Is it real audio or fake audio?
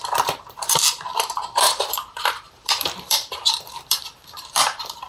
fake